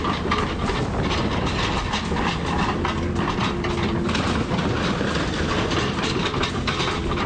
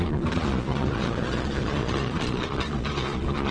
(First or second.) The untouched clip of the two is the first